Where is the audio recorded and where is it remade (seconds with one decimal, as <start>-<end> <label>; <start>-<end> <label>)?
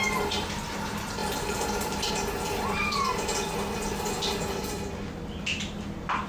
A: 0.0-1.2 recorded; 1.2-2.1 remade; 2.1-6.3 recorded